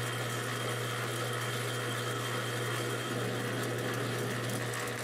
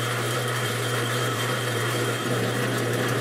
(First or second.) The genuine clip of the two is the first